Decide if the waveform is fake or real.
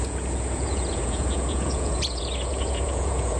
fake